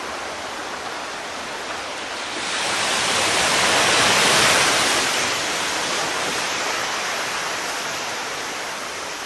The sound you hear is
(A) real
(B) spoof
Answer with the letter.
A